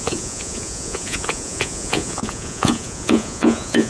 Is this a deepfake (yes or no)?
yes